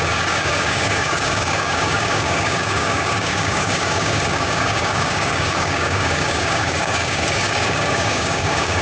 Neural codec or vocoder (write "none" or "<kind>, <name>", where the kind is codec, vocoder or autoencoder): codec, DAC